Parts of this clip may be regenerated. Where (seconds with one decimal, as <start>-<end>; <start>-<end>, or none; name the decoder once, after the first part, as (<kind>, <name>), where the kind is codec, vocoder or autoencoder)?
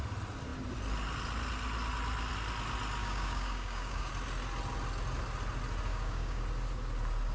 3.0-4.1 (codec, DAC); 5.9-6.4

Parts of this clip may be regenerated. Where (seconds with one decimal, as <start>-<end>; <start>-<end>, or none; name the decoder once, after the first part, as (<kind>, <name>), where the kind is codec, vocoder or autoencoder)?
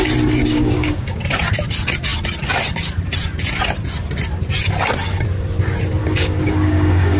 0.5-1.2 (codec, DAC); 6.0-7.2